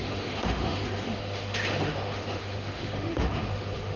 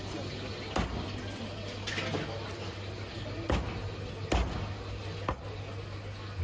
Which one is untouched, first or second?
second